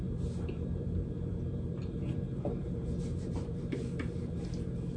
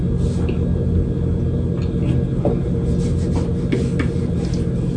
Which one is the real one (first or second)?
second